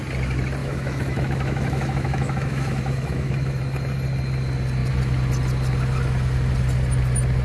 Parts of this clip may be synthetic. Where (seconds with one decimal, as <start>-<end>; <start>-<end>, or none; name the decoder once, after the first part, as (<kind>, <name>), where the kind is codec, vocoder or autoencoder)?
0.6-3.6 (autoencoder, DAC-VAE)